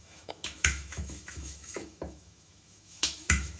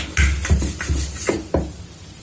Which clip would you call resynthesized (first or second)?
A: first